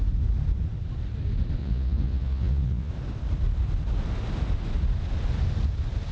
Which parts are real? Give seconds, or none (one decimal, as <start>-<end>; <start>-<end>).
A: 0.0-1.6; 2.9-6.1